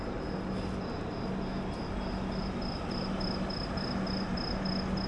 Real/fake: real